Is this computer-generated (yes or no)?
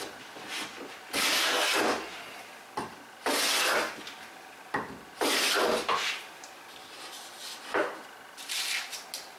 no